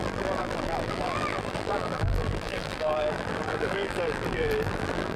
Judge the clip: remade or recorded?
remade